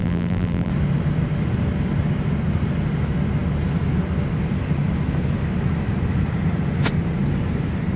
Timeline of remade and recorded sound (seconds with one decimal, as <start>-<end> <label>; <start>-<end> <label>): 0.0-0.7 remade; 0.7-8.0 recorded